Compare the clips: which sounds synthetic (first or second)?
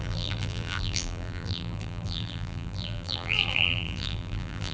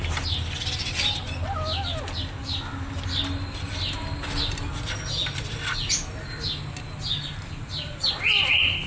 first